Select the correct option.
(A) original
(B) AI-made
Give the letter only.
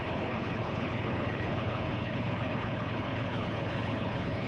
B